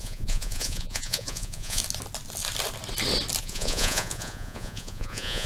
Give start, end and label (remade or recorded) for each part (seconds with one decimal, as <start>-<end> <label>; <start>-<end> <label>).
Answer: 0.0-1.8 remade; 1.8-3.4 recorded; 3.4-5.5 remade